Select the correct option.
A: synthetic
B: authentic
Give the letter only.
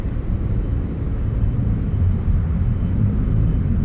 A